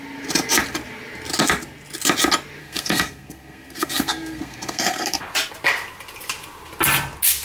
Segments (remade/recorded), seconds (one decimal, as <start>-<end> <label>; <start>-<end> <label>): 0.0-2.6 recorded; 2.6-5.2 remade; 5.2-7.4 recorded